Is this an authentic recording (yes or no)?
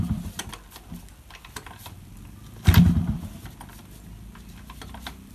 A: yes